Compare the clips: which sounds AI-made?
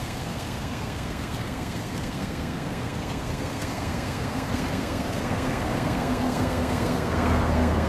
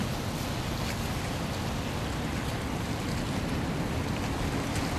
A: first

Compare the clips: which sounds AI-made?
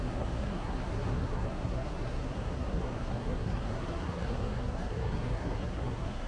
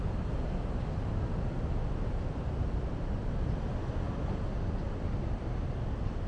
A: first